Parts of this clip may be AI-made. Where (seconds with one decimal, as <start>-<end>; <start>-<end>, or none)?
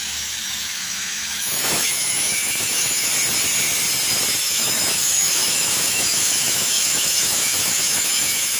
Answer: 0.0-3.1; 4.4-8.6